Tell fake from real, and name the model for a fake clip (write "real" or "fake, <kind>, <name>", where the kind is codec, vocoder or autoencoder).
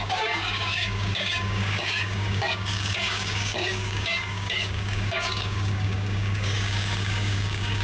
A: fake, codec, DAC